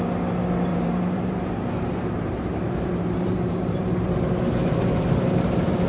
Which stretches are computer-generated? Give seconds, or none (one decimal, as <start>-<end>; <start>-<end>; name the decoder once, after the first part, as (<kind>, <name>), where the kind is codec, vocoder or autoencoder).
0.7-4.1 (vocoder, BigVGAN v2)